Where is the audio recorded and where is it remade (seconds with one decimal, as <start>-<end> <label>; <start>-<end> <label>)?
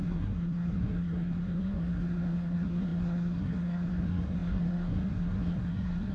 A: 0.0-6.1 remade